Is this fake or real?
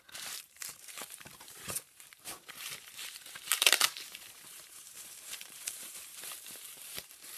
fake